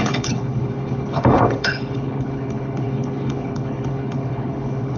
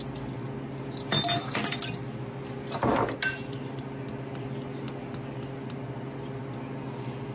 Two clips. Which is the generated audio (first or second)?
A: first